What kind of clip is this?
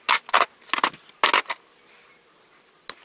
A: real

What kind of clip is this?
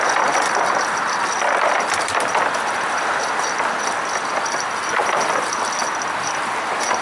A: real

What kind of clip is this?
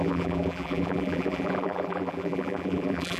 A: fake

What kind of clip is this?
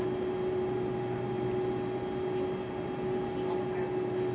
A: real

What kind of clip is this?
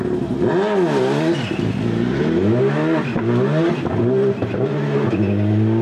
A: real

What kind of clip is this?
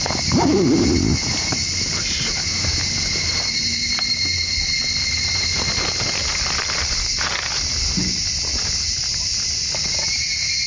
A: real